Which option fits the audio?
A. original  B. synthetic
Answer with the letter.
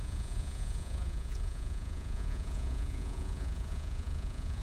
B